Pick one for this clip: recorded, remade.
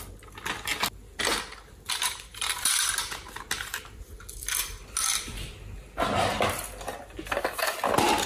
recorded